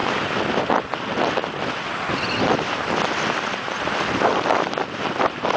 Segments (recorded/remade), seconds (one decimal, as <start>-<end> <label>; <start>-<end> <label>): 0.0-0.6 remade; 0.6-1.4 recorded; 1.4-4.8 remade; 4.8-5.6 recorded